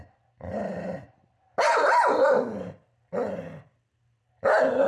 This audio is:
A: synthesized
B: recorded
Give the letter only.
B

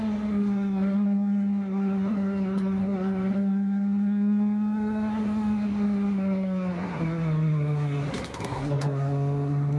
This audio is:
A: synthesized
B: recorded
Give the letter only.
A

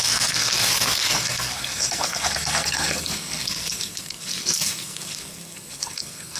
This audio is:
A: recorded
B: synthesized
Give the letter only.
B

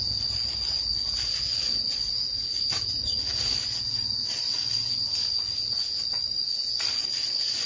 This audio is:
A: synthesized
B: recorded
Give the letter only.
B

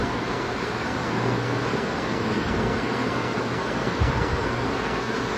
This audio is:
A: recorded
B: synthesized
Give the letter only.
B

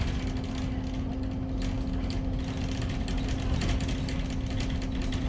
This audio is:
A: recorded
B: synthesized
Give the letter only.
A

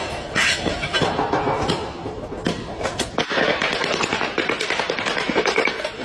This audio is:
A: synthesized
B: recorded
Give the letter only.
B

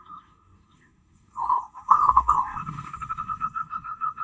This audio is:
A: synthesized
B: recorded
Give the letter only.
A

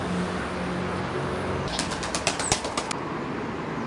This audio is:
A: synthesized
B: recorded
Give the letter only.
B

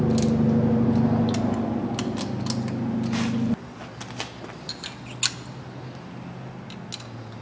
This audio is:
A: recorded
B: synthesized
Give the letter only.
A